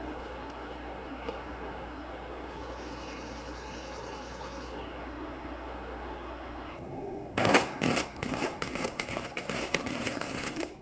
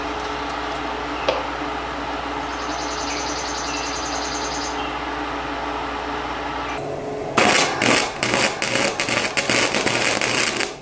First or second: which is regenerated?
first